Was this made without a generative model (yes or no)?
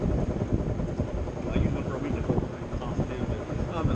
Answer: yes